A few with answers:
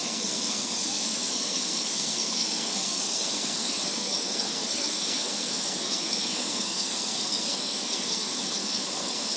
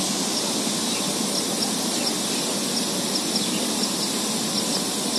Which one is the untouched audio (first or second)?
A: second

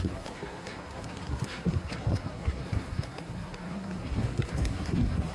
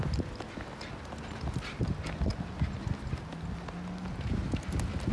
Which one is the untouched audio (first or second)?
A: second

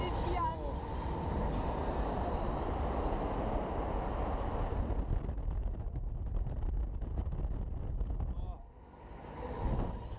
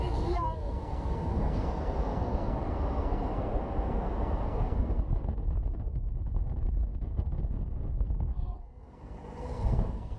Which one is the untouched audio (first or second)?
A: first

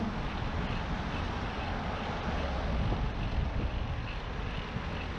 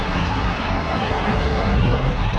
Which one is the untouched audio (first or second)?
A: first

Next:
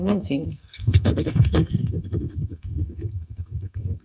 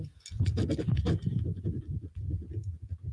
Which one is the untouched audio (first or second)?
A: second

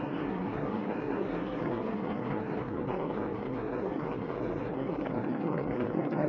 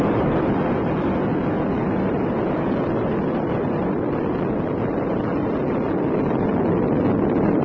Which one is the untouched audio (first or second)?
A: second